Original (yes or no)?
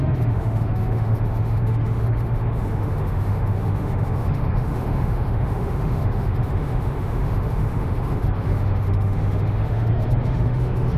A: no